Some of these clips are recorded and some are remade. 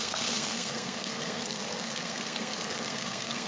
remade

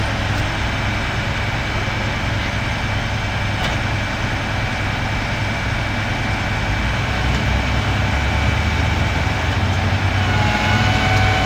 recorded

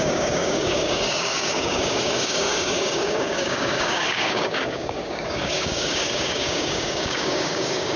remade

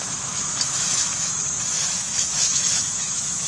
remade